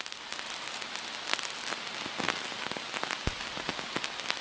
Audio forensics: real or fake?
real